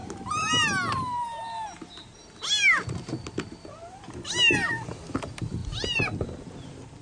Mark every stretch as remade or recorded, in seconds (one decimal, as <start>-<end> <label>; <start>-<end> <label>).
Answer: 0.0-7.0 recorded

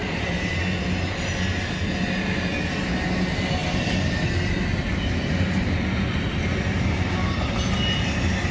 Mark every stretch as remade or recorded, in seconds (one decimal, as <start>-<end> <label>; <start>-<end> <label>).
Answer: 0.0-0.6 remade; 0.6-8.5 recorded

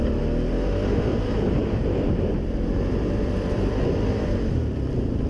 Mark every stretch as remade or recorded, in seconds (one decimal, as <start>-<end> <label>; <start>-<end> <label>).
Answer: 0.0-1.1 recorded; 1.1-4.3 remade; 4.3-5.3 recorded